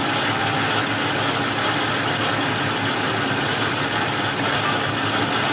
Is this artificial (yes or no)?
no